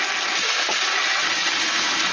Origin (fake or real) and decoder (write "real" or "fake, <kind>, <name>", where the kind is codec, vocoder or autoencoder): real